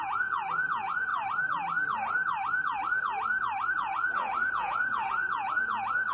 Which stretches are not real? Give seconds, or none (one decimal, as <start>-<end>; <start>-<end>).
0.0-1.1; 3.7-6.1